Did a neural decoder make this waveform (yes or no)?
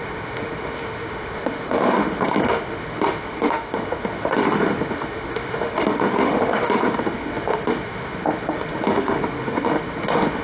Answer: yes